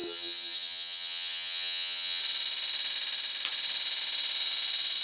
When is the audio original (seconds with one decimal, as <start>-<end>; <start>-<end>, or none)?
2.2-5.0